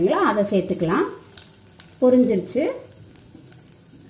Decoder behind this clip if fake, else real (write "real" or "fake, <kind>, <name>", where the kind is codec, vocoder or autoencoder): real